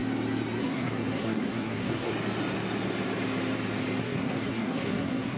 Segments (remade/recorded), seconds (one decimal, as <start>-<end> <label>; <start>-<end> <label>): 0.0-0.6 recorded; 0.6-2.1 remade; 2.1-4.0 recorded; 4.0-5.4 remade